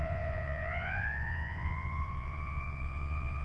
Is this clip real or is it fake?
fake